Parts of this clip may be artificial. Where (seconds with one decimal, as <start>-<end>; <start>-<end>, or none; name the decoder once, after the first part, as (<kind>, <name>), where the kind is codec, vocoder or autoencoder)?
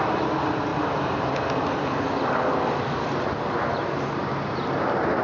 none